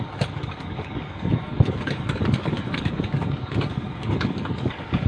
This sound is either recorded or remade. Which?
remade